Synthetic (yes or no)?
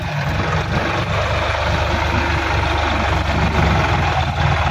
no